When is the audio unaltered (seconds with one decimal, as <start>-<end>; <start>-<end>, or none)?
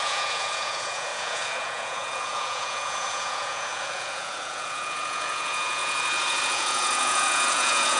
none